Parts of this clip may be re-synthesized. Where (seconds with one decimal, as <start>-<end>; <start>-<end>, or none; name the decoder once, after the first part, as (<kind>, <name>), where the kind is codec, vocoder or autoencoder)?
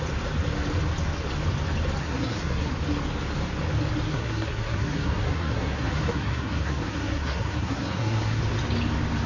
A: 2.0-2.7 (codec, SNAC); 4.1-8.4